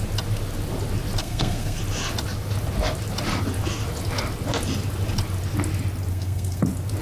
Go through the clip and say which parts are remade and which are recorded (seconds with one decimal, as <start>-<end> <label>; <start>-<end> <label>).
0.0-1.2 recorded; 1.2-1.8 remade; 1.8-6.1 recorded; 6.1-6.6 remade; 6.6-7.0 recorded